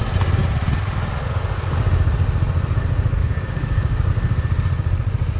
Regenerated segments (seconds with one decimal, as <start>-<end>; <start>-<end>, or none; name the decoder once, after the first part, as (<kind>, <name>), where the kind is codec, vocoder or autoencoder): 3.2-4.1 (codec, DAC)